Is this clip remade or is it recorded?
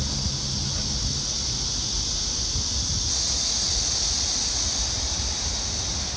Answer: recorded